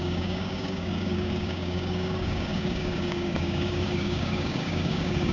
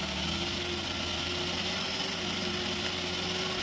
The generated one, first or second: first